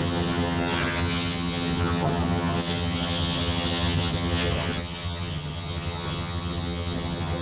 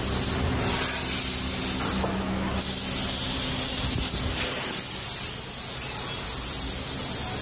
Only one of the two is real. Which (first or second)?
second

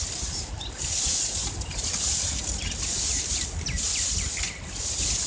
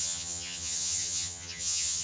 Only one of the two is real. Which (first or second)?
first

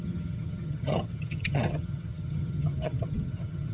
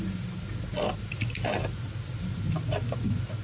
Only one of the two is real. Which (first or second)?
second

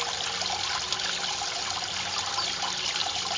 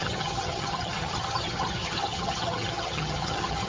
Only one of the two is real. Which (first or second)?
first